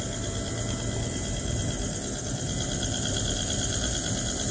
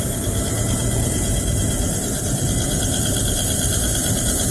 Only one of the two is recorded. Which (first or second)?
first